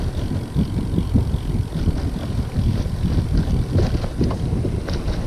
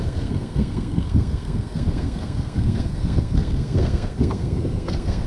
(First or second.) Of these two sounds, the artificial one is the second